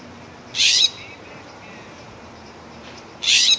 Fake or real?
fake